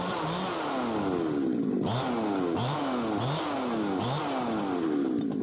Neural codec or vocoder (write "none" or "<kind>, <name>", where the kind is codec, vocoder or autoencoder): none